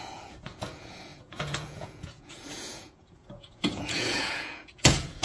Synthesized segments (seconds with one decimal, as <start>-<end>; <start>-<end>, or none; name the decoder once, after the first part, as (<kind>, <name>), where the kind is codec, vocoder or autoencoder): 0.0-5.2 (vocoder, Vocos)